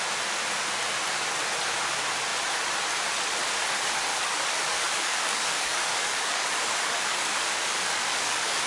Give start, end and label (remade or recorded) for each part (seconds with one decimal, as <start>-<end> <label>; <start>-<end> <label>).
0.0-4.1 recorded; 4.1-8.7 remade